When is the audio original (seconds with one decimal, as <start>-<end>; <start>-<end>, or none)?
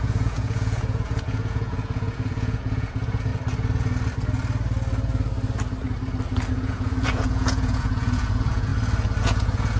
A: 3.3-6.5; 8.7-9.2